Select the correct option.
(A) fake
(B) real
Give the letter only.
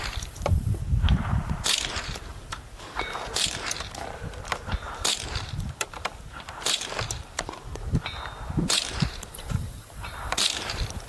A